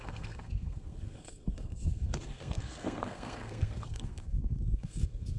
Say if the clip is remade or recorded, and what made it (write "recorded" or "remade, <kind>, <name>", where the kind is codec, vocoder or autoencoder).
remade, codec, SNAC